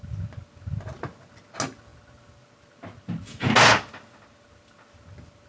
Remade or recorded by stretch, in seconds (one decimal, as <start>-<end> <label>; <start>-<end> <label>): 0.0-5.5 recorded